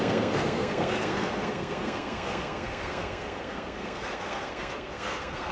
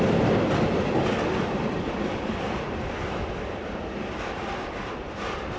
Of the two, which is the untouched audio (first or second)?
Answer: second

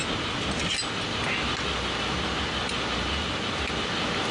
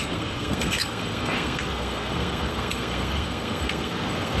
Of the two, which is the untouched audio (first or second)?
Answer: first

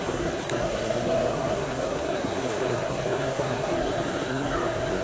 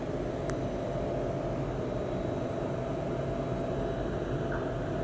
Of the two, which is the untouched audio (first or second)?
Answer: second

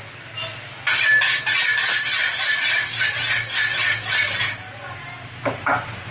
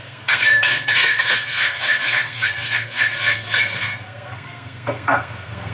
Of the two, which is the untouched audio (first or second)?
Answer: first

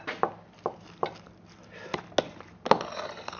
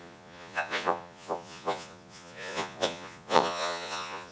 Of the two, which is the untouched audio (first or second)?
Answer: first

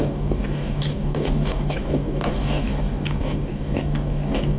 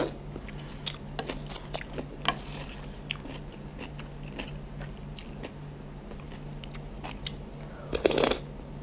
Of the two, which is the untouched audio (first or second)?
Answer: second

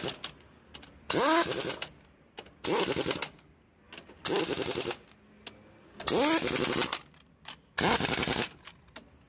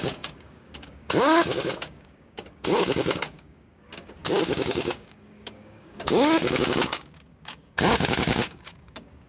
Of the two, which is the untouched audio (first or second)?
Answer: first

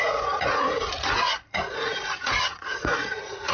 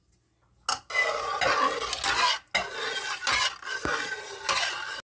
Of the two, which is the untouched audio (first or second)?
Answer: second